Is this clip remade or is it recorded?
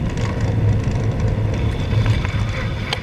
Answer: recorded